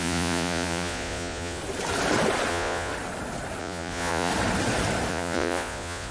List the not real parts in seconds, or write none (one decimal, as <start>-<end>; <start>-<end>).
0.0-1.6; 2.5-2.9; 3.6-4.3; 5.1-6.1